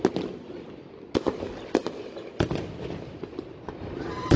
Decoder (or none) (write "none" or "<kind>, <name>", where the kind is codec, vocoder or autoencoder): none